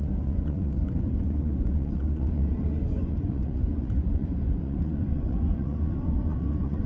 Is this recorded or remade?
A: remade